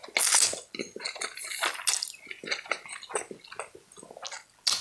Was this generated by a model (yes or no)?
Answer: no